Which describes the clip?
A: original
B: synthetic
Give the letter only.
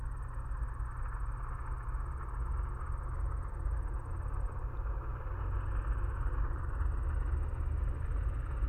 A